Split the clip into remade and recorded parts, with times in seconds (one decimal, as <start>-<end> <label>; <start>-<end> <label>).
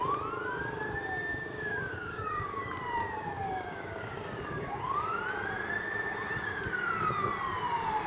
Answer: 0.0-1.3 recorded; 1.3-5.2 remade; 5.2-8.1 recorded